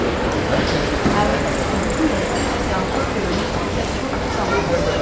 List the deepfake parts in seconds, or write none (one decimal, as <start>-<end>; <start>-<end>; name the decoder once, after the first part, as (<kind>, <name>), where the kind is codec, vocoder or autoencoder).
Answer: none